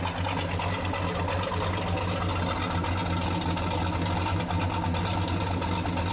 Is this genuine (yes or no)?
yes